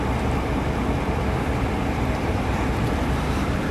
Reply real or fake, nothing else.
fake